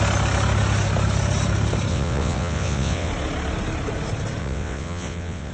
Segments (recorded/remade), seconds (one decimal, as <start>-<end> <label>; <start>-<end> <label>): 0.0-1.9 recorded; 1.9-3.1 remade; 3.1-4.4 recorded; 4.4-5.5 remade